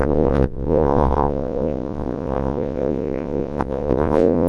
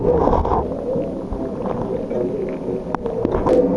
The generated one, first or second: first